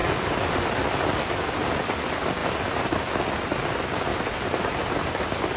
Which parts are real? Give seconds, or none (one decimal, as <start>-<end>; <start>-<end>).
0.0-4.1; 4.8-5.6